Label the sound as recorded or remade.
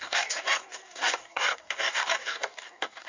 remade